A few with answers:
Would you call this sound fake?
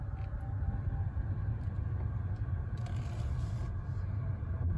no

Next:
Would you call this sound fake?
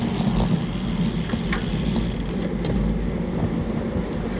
no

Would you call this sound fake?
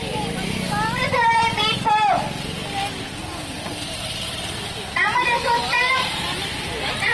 no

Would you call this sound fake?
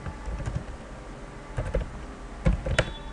no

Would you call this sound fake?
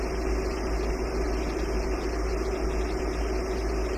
no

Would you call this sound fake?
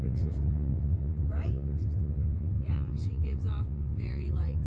yes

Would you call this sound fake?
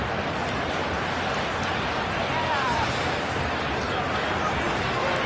no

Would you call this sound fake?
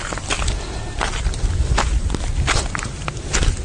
no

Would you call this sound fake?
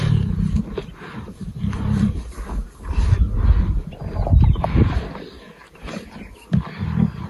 no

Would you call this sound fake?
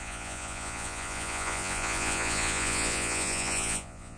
yes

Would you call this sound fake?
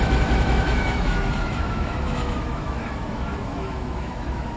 yes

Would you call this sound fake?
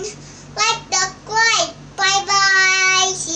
no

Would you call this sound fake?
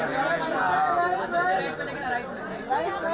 no